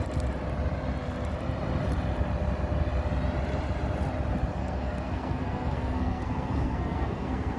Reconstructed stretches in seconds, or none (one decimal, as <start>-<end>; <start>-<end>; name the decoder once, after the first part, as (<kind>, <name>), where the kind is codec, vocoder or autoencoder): 4.6-7.6 (codec, SNAC)